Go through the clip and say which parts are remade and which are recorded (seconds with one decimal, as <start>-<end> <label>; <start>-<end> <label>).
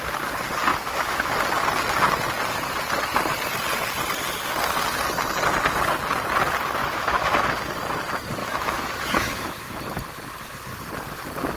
0.0-0.7 recorded; 0.7-1.3 remade; 1.3-6.8 recorded; 6.8-7.6 remade; 7.6-8.4 recorded; 8.4-9.8 remade; 9.8-11.6 recorded